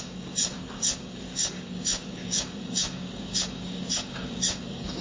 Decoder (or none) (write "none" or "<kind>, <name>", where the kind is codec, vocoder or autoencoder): codec, DAC